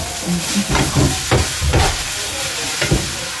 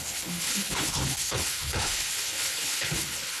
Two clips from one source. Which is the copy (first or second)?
second